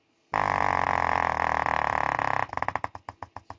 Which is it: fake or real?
real